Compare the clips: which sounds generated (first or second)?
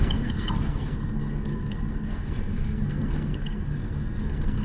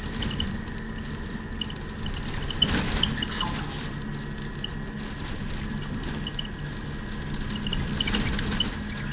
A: first